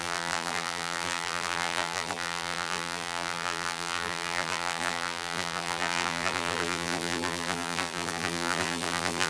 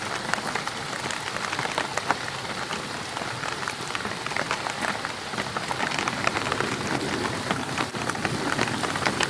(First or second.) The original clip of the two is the second